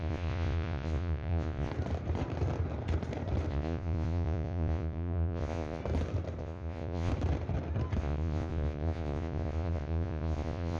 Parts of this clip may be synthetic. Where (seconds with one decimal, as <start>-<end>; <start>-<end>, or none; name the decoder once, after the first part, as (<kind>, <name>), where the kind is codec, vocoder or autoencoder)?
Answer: 0.0-1.7 (vocoder, Vocos); 3.5-5.8; 6.4-7.1; 8.0-10.8